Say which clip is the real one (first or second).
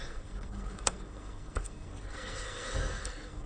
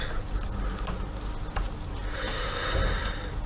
second